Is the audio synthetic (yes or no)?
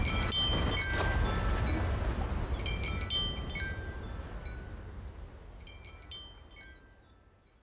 no